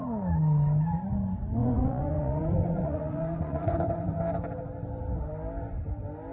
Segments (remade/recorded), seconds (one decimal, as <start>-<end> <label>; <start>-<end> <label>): 0.0-1.6 recorded; 1.6-4.2 remade; 4.2-6.3 recorded